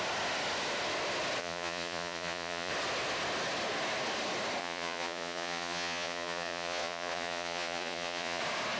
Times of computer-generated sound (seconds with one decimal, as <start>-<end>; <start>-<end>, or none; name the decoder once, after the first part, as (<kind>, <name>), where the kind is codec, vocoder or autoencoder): 1.4-2.7 (vocoder, Vocos); 4.6-8.4